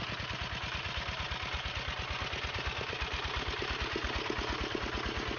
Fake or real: real